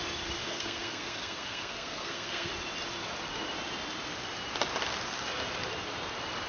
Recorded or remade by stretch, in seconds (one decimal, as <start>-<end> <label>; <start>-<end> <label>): 0.0-0.4 recorded; 0.4-2.5 remade; 2.5-6.5 recorded